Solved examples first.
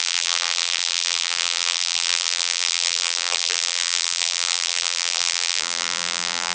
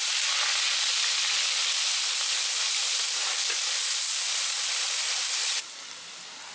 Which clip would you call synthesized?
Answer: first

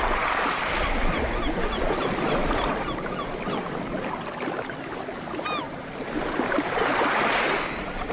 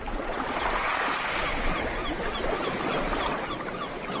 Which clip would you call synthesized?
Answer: second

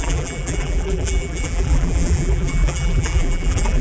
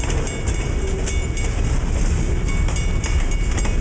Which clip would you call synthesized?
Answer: first